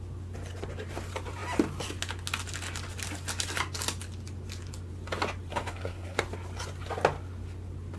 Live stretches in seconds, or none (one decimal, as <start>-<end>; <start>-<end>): 0.0-5.5; 6.2-8.0